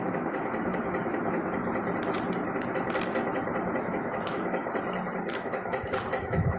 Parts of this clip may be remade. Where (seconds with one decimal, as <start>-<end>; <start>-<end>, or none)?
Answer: 0.0-1.6; 3.8-4.6; 5.4-6.6